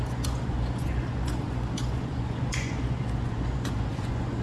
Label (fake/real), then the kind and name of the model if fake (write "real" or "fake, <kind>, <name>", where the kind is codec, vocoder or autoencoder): fake, vocoder, Vocos